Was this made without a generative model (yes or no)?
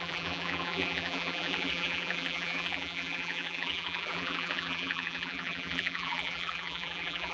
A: no